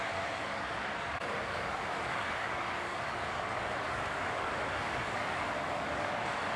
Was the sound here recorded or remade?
remade